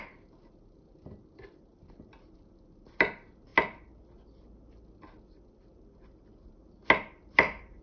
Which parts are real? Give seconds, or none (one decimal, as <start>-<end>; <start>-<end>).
0.0-7.8